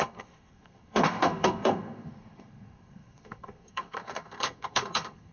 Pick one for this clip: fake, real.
fake